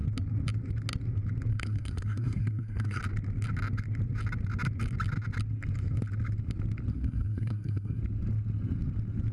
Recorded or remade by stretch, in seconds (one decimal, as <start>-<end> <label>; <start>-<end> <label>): 0.0-1.5 recorded; 1.5-3.0 remade; 3.0-6.9 recorded; 6.9-8.0 remade; 8.0-9.3 recorded